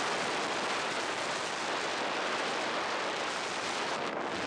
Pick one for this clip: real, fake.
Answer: real